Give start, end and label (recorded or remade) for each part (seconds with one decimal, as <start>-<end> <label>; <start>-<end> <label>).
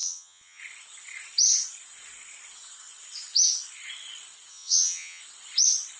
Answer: 0.0-0.6 remade; 0.6-4.5 recorded; 4.5-5.2 remade; 5.2-6.0 recorded